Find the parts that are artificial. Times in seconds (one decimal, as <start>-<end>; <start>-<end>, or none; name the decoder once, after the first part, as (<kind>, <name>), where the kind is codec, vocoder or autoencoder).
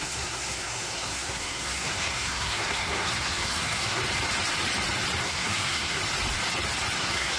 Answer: 0.0-4.0 (codec, SNAC); 5.2-6.0; 7.0-7.4